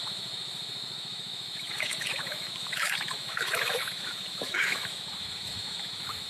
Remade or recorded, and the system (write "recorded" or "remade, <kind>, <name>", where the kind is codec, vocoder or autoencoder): remade, autoencoder, DAC-VAE